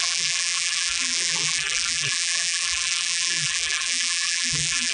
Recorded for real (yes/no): no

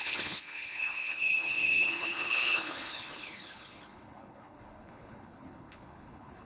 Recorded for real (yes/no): no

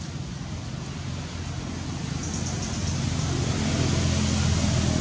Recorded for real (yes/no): yes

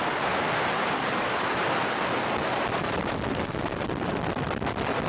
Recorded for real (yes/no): yes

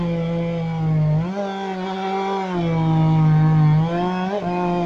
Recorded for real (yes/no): yes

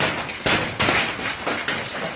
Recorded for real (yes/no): yes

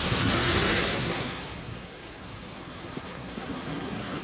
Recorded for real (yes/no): no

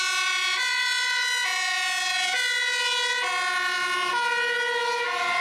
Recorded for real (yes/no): yes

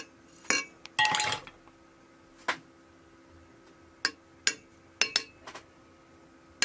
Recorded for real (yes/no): yes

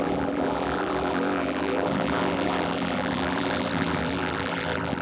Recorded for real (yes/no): no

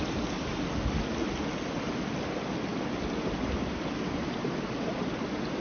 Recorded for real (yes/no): yes